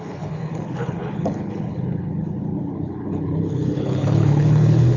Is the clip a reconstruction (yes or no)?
yes